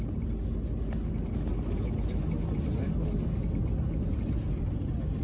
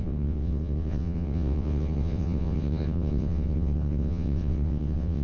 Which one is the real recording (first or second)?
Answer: first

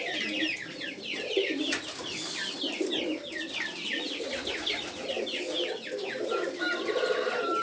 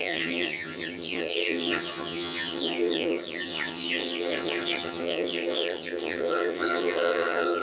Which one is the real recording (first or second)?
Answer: first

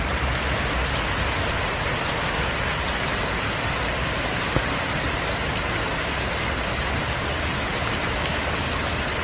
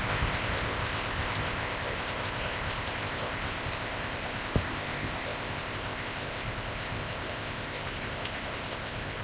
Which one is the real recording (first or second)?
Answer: first